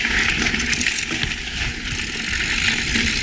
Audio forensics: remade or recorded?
recorded